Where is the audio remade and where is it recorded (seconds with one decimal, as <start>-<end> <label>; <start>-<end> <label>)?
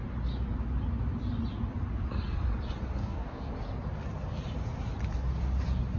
0.0-3.0 recorded; 3.0-3.5 remade; 3.5-6.0 recorded